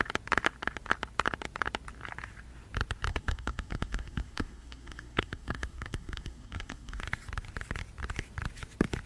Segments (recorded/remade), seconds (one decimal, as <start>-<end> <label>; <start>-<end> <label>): 0.0-3.1 recorded; 3.1-7.0 remade; 7.0-9.1 recorded